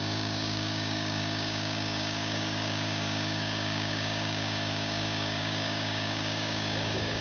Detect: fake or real fake